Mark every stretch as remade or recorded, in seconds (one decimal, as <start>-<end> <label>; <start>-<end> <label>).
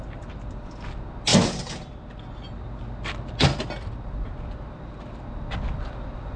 0.0-6.4 recorded